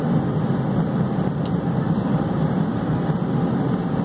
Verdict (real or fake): real